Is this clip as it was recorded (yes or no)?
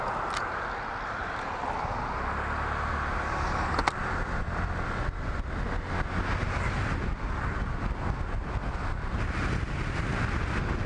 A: yes